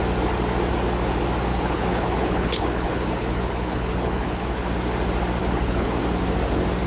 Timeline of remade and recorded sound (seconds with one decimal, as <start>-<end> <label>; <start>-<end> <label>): 0.0-1.5 recorded; 1.5-4.7 remade; 4.7-5.4 recorded; 5.4-6.0 remade; 6.0-6.9 recorded